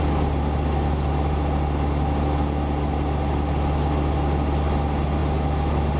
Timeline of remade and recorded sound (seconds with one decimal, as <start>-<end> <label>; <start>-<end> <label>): 0.0-6.0 recorded